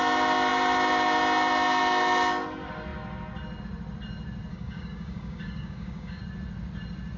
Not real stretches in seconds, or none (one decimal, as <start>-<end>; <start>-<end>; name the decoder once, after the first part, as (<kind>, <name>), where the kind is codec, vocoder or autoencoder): 4.5-6.2 (codec, DAC)